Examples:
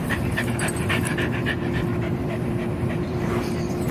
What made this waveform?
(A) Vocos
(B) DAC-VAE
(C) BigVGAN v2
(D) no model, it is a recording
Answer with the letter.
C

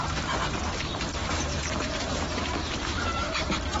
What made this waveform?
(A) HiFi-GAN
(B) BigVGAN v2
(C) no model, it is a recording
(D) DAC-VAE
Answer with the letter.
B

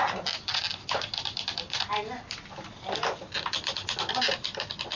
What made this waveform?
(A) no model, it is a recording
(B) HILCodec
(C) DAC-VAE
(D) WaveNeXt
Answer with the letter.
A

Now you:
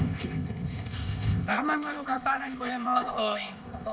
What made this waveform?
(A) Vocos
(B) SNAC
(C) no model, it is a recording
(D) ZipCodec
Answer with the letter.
D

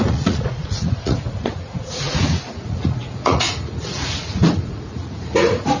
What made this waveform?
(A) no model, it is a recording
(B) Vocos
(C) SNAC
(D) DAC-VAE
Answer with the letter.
B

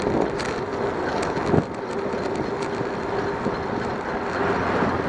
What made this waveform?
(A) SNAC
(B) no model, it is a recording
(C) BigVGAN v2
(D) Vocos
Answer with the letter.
B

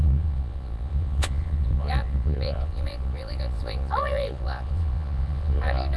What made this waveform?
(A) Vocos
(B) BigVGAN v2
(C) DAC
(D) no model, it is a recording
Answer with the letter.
A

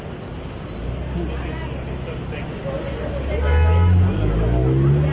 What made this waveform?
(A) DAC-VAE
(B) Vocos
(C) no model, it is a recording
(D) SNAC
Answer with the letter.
C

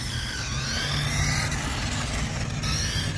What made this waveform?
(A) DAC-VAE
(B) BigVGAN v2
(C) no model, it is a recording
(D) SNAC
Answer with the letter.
C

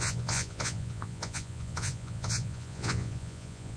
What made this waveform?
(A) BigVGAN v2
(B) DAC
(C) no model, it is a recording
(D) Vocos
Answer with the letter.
D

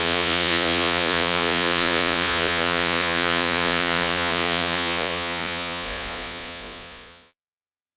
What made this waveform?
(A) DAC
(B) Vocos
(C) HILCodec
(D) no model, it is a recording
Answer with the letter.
B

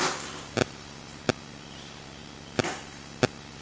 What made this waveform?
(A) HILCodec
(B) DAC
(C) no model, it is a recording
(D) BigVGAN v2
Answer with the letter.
C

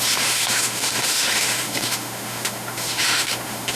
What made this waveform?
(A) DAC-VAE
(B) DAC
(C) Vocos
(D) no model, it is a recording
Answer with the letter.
A